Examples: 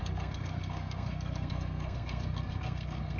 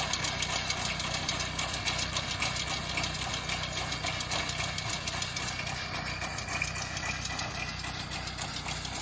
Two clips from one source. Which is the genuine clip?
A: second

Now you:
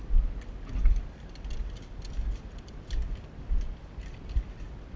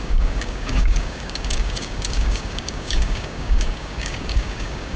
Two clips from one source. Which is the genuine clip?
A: first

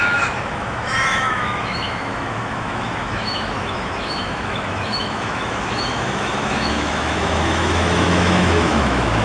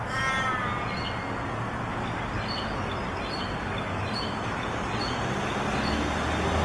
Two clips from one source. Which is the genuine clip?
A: second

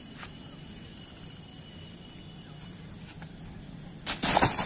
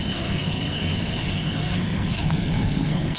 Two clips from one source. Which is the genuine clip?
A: first